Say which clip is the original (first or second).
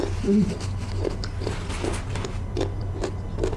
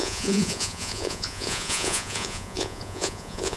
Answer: first